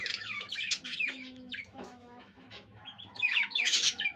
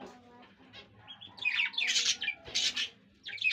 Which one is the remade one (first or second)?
first